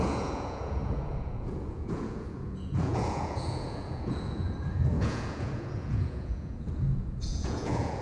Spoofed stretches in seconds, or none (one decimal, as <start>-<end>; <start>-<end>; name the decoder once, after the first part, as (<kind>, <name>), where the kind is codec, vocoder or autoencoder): 0.0-8.0 (vocoder, Vocos)